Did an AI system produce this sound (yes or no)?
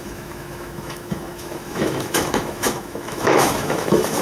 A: yes